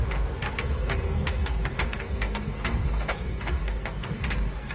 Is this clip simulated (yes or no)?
yes